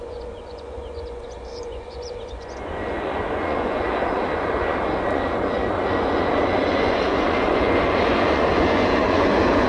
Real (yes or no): no